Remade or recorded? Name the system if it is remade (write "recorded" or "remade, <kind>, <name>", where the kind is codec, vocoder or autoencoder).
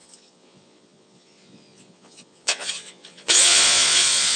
remade, vocoder, Vocos